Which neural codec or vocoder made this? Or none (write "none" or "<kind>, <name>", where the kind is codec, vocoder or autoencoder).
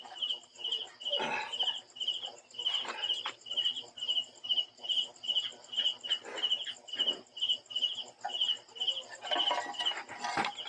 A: none